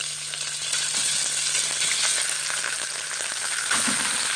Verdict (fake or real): real